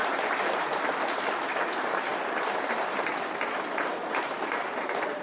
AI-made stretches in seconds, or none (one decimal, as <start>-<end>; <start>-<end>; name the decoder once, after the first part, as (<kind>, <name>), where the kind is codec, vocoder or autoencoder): none